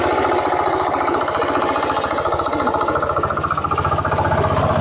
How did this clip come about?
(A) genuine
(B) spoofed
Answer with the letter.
A